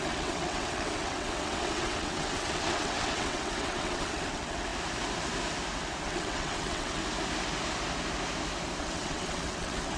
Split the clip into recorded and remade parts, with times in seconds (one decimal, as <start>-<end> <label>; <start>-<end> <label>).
0.0-4.7 remade; 4.7-6.0 recorded; 6.0-7.0 remade; 7.0-8.8 recorded; 8.8-10.0 remade